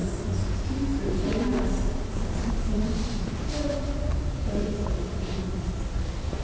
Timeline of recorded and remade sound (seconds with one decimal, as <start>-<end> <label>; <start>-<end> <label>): 0.0-0.5 recorded; 0.5-6.4 remade